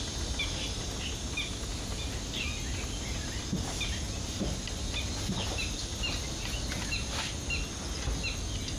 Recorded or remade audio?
recorded